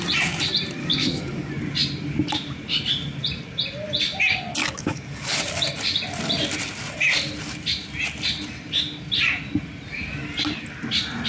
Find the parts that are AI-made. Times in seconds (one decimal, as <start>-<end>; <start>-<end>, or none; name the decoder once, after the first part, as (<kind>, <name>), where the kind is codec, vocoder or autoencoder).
0.8-1.5 (codec, DAC); 4.6-5.4